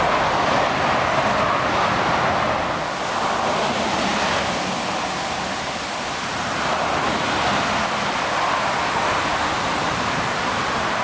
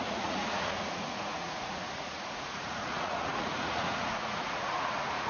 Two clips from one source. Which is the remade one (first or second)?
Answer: second